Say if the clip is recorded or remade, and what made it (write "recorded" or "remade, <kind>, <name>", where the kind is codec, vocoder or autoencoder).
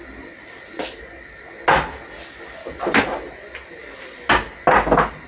recorded